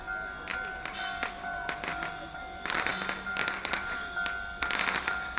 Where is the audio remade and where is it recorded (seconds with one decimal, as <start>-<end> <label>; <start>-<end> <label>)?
0.0-5.4 recorded